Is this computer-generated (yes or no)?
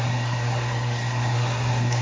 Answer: yes